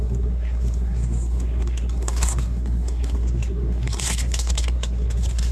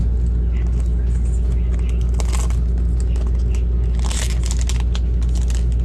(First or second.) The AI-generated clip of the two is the first